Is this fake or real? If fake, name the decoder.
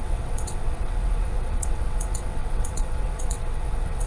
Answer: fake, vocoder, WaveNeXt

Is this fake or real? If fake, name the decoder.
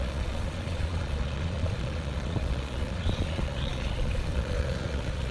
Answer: fake, vocoder, Vocos